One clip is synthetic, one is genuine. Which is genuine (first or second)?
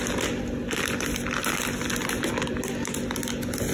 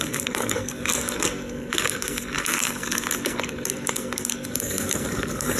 first